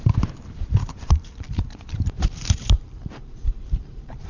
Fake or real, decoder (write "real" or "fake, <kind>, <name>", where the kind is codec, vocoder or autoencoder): fake, vocoder, BigVGAN v2